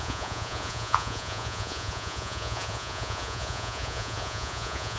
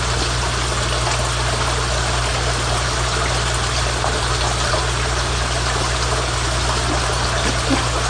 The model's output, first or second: first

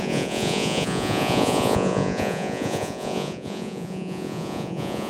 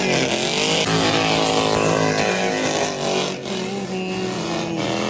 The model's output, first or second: first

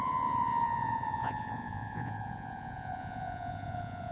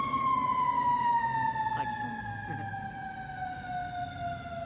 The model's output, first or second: first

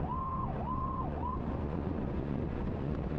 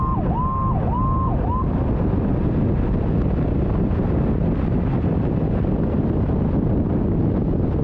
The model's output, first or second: first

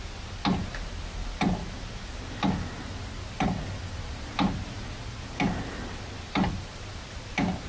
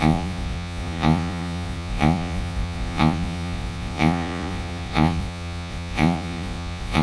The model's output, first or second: second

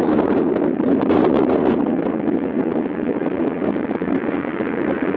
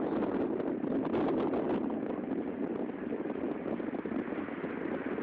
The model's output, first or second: first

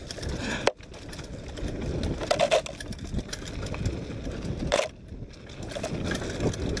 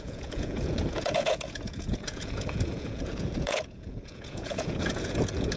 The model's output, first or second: second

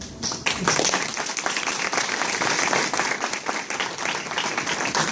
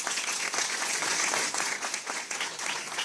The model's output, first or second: second